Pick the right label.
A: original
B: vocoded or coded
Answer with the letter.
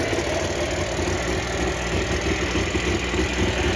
A